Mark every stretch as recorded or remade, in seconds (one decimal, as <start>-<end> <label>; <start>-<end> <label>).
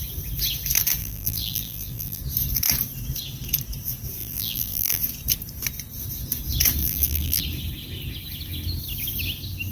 0.0-1.0 recorded; 1.0-2.2 remade; 2.2-4.2 recorded; 4.2-5.0 remade; 5.0-6.8 recorded; 6.8-7.4 remade; 7.4-9.7 recorded